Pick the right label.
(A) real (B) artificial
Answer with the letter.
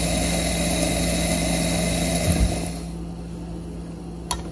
A